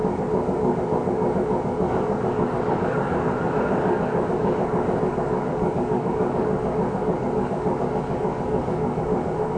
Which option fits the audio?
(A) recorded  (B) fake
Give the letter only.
B